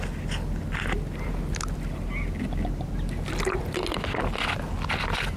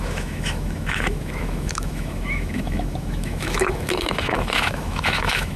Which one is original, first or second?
first